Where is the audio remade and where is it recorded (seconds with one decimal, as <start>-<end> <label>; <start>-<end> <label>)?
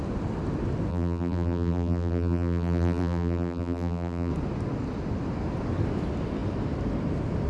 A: 0.0-0.9 recorded; 0.9-4.3 remade; 4.3-7.5 recorded